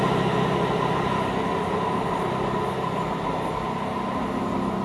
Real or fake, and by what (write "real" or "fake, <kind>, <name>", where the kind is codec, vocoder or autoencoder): real